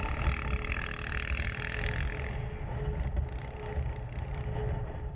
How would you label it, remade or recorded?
recorded